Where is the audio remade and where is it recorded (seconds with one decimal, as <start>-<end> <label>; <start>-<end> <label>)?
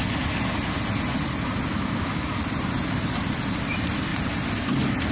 0.0-1.7 recorded; 1.7-2.4 remade; 2.4-5.1 recorded